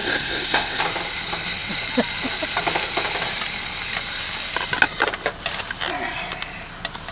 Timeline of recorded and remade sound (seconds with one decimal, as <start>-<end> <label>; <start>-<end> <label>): 0.0-0.8 remade; 0.8-7.1 recorded